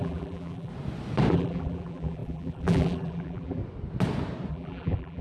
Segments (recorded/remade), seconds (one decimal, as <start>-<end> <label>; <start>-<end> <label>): 0.0-0.7 remade; 0.7-1.3 recorded; 1.3-3.6 remade; 3.6-4.5 recorded; 4.5-5.2 remade